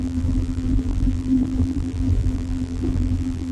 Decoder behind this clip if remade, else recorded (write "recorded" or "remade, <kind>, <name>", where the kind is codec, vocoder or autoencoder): remade, vocoder, BigVGAN v2